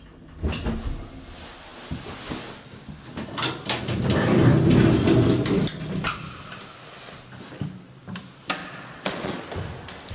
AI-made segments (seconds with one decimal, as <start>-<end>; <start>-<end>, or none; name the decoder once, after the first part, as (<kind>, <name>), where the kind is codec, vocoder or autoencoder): 8.6-9.4 (vocoder, Vocos)

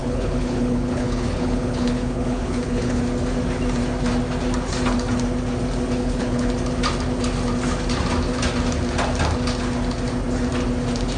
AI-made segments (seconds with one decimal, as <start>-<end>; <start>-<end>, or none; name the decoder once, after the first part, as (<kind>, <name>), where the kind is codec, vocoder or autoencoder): 0.0-3.0 (codec, HILCodec); 6.0-6.5

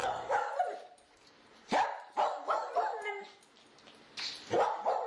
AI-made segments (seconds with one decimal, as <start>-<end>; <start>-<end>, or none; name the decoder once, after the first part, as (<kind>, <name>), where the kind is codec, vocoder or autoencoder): 0.0-3.1 (vocoder, BigVGAN v2)